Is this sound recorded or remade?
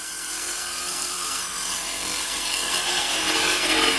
remade